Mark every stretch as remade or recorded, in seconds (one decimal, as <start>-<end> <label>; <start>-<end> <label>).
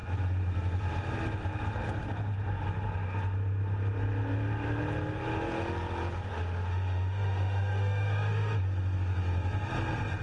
0.0-6.3 recorded; 6.3-8.6 remade; 8.6-10.2 recorded